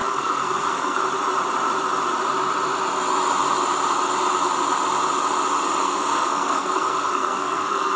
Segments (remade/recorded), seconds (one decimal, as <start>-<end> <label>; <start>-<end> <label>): 0.0-1.0 remade; 1.0-5.8 recorded; 5.8-8.0 remade